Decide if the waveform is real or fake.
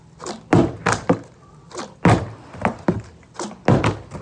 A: real